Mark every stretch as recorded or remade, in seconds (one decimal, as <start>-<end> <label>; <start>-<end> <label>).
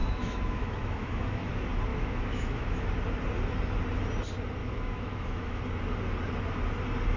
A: 0.0-1.5 remade; 1.5-1.9 recorded; 1.9-2.9 remade; 2.9-4.6 recorded; 4.6-5.6 remade; 5.6-7.2 recorded